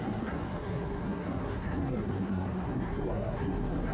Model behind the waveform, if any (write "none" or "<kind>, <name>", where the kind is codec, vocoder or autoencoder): codec, SNAC